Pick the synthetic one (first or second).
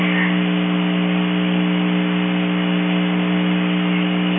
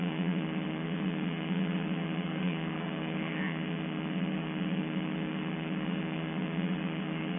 second